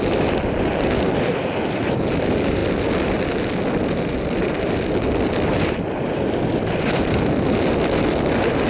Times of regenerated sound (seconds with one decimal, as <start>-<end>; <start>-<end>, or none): 0.0-2.6; 3.8-8.7